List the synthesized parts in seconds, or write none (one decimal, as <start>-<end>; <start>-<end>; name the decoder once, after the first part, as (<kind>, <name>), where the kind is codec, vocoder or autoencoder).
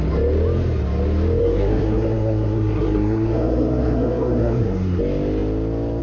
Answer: 1.4-5.0 (codec, SNAC)